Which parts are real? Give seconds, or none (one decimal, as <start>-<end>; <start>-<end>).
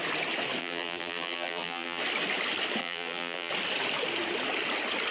0.0-0.6; 2.0-2.8; 3.5-5.1